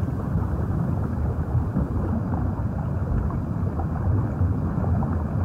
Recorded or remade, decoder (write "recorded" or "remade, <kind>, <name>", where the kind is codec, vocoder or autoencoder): recorded